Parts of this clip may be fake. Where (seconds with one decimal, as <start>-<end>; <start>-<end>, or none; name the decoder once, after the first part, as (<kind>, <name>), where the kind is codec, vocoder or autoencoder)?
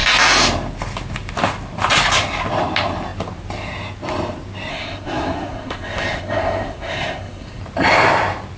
4.7-7.6 (codec, SNAC)